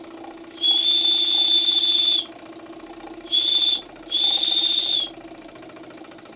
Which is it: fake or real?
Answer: real